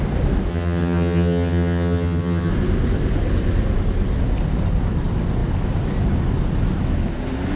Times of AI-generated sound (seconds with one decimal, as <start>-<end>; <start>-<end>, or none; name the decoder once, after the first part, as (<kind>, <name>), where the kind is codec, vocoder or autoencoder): 0.5-2.5 (vocoder, HiFi-GAN)